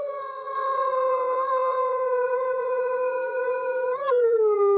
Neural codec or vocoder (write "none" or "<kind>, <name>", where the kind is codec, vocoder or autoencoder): vocoder, Vocos